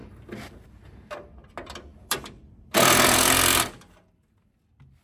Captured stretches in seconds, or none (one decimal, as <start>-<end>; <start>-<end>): 0.0-1.9